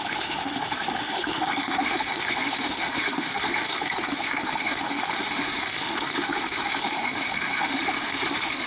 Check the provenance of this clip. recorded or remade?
remade